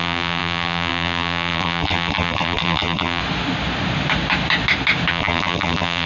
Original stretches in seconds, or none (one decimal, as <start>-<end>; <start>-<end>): 3.2-5.1